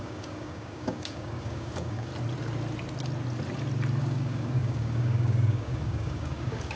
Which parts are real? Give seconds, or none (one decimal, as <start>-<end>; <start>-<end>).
2.1-4.0